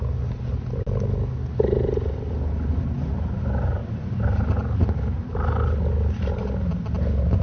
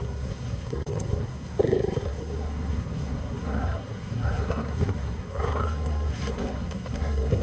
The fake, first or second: second